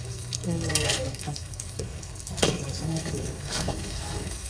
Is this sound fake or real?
fake